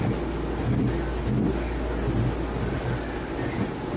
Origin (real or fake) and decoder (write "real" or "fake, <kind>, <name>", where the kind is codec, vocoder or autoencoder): real